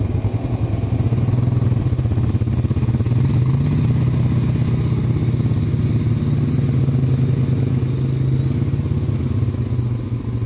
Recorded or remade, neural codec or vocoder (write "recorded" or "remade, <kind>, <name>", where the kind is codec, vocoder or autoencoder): recorded